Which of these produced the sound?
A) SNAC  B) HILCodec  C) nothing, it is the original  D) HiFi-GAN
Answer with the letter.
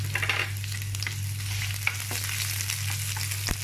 C